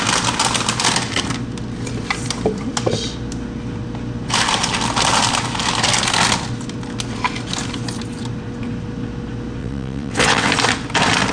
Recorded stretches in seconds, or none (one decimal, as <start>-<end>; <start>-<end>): 0.0-9.6; 10.5-11.3